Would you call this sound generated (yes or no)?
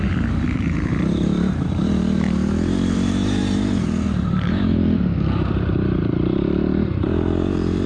yes